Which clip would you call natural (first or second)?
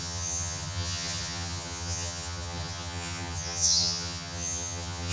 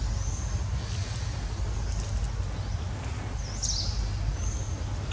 second